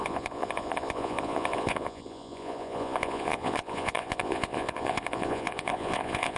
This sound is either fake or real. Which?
fake